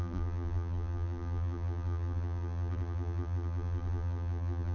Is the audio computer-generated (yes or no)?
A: yes